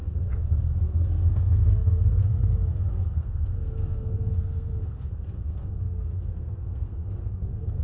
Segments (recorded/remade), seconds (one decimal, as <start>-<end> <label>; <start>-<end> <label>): 0.0-2.2 remade; 2.2-2.9 recorded; 2.9-7.8 remade